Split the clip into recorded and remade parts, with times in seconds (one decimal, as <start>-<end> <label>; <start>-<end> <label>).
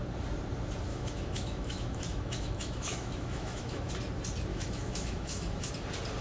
0.0-0.9 recorded; 0.9-3.9 remade; 3.9-4.5 recorded; 4.5-5.7 remade; 5.7-6.2 recorded